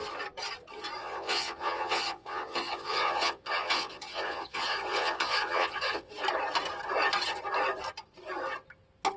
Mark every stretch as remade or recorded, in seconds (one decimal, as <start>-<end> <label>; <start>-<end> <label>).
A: 0.0-1.0 recorded; 1.0-6.1 remade; 6.1-9.2 recorded